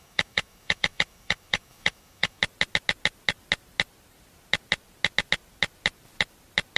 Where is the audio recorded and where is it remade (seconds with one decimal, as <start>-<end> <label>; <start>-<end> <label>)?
0.0-2.4 remade; 2.4-6.8 recorded